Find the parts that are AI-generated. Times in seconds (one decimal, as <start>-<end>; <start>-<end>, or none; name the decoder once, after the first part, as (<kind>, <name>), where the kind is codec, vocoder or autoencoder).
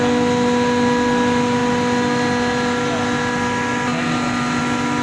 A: none